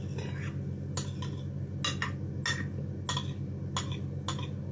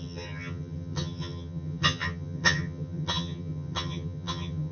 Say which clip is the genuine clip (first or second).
first